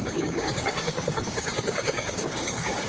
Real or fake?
fake